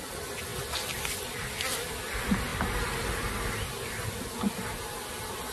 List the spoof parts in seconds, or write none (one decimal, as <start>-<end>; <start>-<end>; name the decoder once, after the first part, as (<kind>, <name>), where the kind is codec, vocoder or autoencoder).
none